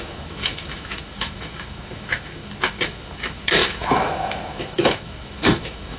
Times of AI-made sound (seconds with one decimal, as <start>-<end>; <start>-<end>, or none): 0.0-6.0